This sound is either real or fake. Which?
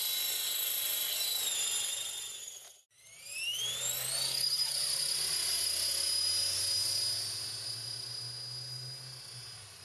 real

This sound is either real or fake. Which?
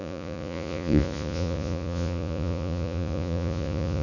fake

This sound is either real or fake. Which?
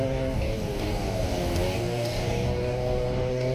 fake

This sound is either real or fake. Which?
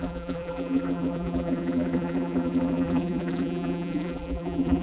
fake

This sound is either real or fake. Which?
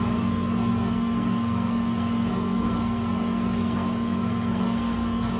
fake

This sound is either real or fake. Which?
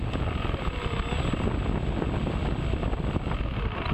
real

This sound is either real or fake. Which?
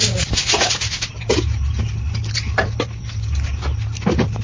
real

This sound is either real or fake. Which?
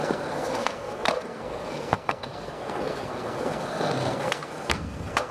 fake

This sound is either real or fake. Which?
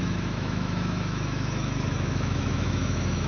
fake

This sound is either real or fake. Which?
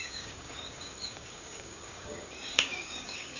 fake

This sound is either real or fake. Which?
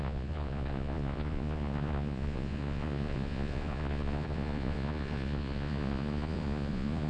fake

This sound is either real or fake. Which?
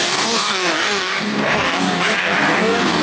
fake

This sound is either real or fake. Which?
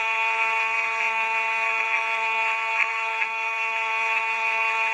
fake